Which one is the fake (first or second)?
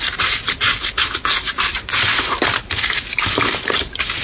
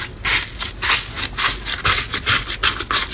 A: first